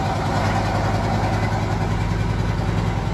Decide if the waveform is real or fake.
real